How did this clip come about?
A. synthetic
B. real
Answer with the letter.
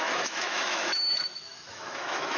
A